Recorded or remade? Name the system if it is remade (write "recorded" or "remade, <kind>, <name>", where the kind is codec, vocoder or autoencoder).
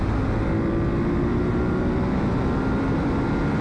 recorded